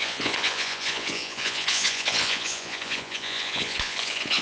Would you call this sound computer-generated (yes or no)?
yes